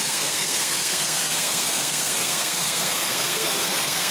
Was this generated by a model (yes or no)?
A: yes